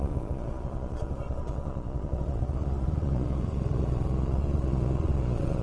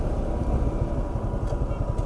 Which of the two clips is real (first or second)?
second